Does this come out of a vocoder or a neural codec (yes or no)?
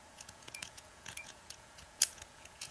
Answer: yes